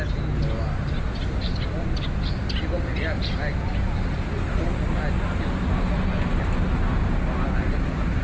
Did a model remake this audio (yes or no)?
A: no